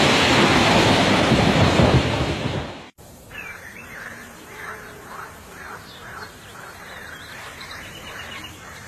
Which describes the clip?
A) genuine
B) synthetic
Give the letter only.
B